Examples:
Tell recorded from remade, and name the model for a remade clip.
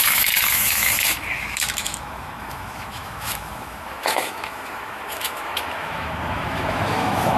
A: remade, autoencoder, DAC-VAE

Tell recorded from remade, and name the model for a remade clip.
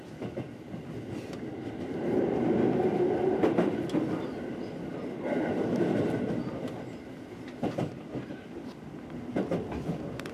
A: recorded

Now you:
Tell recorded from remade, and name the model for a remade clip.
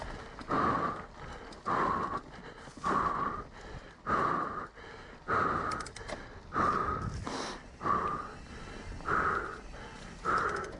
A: recorded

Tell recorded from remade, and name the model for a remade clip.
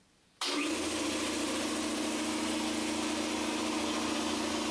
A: recorded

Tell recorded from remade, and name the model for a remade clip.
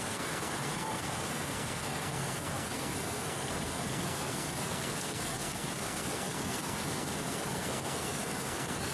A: remade, codec, SNAC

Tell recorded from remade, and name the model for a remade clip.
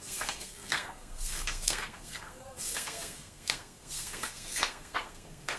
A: remade, codec, SNAC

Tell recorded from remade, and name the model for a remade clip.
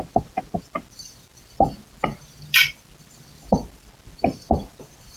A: recorded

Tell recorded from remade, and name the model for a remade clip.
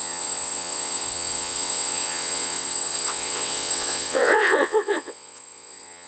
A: remade, vocoder, WaveNeXt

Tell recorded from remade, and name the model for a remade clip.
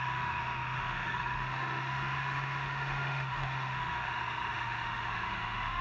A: remade, autoencoder, DAC-VAE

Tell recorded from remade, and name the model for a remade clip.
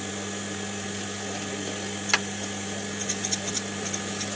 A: recorded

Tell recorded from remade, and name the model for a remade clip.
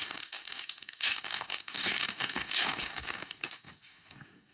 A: remade, codec, DAC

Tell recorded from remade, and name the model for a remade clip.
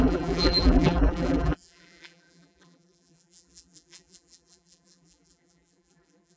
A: remade, vocoder, BigVGAN v2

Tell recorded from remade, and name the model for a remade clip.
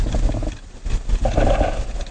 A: recorded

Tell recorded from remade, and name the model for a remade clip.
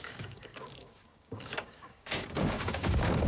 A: remade, codec, DAC